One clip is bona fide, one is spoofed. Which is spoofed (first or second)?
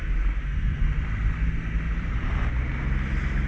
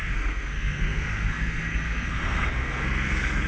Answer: second